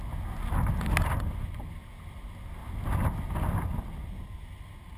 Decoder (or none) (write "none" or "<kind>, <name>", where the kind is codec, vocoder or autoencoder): none